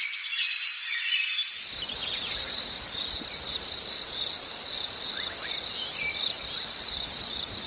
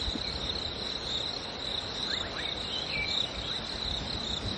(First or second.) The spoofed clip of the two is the first